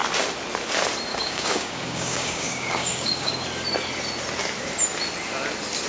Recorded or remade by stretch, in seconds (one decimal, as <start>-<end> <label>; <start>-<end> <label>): 0.0-1.1 recorded; 1.1-3.3 remade; 3.3-5.9 recorded